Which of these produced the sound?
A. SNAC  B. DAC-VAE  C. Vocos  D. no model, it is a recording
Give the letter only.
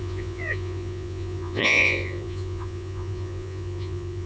C